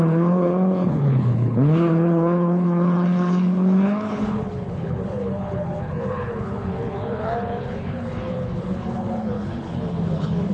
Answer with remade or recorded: remade